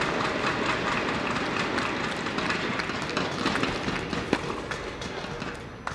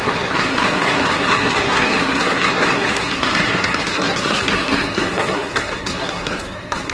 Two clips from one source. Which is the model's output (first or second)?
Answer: second